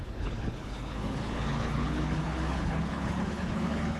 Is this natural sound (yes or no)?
no